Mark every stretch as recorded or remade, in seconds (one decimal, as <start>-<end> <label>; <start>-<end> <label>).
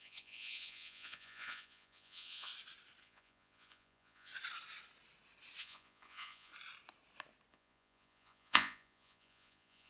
0.0-2.5 remade; 2.5-3.0 recorded; 3.0-4.3 remade; 4.3-5.6 recorded; 5.6-6.5 remade; 6.5-7.5 recorded; 7.5-9.9 remade